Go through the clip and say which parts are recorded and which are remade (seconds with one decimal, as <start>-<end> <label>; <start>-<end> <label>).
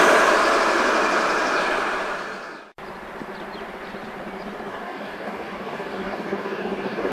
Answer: 0.0-4.7 recorded; 4.7-7.1 remade